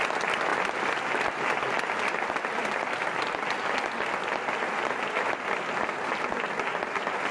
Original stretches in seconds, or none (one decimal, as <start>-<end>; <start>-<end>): 0.0-7.3

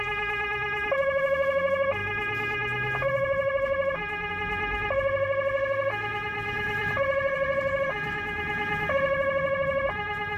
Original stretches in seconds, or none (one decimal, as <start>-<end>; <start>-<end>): 0.0-6.3; 7.8-10.4

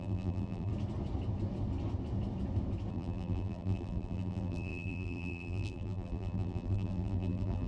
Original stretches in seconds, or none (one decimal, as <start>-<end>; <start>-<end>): 0.7-2.9

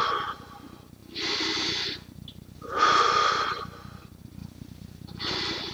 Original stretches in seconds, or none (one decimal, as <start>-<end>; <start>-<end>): 0.0-4.4; 5.3-5.7

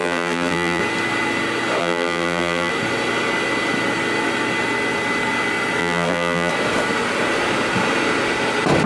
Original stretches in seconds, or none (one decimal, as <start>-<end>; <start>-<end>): 0.8-1.8; 2.7-5.8; 6.5-8.9